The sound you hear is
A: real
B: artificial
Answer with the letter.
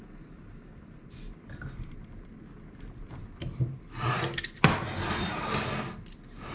A